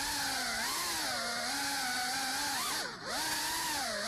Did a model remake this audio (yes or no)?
no